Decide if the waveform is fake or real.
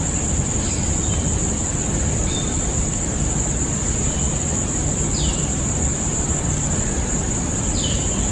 real